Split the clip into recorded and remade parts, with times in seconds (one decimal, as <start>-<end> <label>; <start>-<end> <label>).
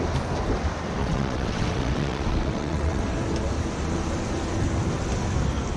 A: 0.0-1.0 recorded; 1.0-3.0 remade; 3.0-5.8 recorded